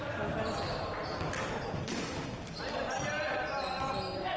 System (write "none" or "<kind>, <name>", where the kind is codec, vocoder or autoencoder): none